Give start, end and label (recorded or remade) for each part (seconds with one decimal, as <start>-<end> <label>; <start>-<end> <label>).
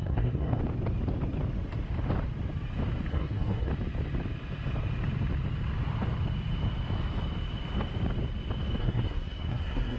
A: 0.0-0.6 remade; 0.6-3.1 recorded; 3.1-3.7 remade; 3.7-8.8 recorded; 8.8-10.0 remade